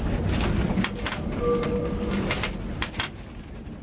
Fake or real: real